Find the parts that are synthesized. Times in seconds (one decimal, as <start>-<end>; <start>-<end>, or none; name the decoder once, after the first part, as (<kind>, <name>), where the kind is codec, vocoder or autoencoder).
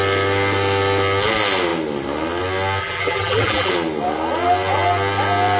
2.8-3.7 (vocoder, BigVGAN v2)